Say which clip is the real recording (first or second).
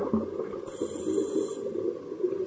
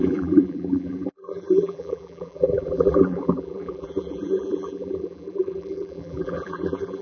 first